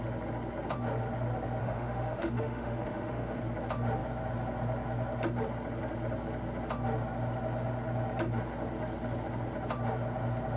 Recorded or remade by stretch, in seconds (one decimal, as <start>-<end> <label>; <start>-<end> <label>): 0.0-1.6 recorded; 1.6-3.4 remade; 3.4-10.6 recorded